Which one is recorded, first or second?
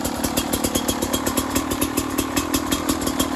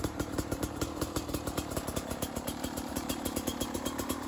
first